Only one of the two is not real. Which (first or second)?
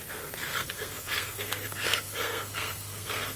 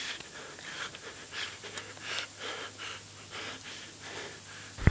first